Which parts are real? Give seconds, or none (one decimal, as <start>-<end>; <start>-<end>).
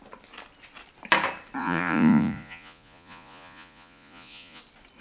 0.0-1.6; 4.6-5.0